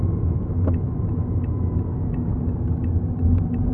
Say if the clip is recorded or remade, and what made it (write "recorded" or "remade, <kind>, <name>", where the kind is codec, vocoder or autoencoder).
recorded